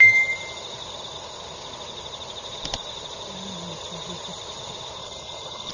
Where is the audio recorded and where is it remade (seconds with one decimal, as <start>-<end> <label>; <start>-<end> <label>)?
0.0-5.0 recorded; 5.0-5.7 remade